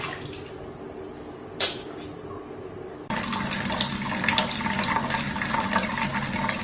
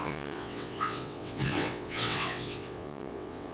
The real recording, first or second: first